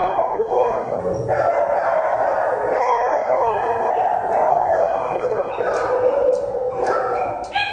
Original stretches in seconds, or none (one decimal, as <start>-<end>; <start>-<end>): 1.0-2.8; 3.9-4.5; 5.5-7.7